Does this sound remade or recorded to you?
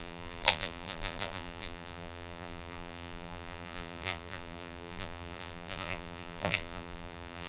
remade